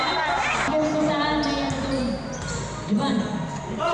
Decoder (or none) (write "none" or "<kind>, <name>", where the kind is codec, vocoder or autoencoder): none